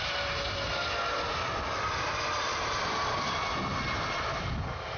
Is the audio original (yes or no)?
yes